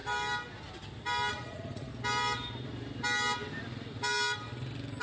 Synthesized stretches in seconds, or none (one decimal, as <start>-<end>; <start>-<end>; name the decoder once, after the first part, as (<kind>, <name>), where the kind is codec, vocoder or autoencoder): 1.3-1.9 (vocoder, Vocos)